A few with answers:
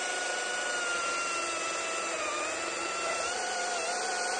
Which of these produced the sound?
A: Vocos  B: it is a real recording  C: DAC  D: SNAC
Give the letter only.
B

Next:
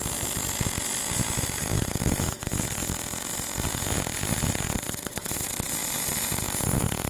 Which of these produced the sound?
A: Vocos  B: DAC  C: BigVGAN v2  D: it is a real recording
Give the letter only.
D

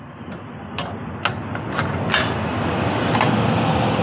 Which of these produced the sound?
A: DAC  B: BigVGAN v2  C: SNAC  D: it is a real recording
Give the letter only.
D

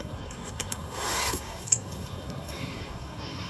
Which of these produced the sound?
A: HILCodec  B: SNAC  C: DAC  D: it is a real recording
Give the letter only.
B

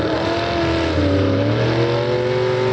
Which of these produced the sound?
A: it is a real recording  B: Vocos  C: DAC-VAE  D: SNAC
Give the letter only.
A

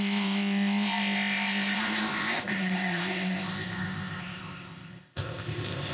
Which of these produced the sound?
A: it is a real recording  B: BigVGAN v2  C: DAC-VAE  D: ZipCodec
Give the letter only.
D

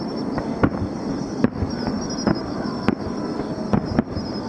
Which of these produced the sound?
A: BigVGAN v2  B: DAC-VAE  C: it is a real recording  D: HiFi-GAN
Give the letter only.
C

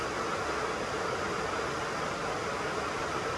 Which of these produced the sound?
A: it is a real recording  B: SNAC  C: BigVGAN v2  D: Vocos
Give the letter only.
A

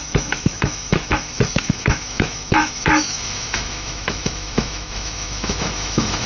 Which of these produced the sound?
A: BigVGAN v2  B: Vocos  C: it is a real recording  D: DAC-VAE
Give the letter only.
D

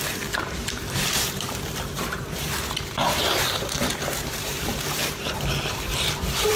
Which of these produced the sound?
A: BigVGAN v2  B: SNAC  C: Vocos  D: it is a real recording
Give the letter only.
A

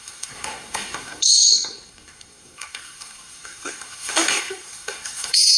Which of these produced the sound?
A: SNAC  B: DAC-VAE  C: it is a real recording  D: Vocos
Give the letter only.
A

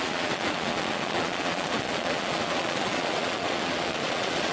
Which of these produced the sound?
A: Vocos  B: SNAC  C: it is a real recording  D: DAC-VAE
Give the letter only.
A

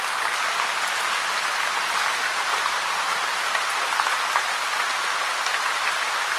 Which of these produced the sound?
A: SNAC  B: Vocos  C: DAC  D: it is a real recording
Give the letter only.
D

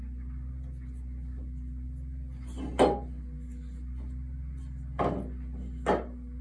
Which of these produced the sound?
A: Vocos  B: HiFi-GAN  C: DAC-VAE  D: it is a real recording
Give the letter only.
D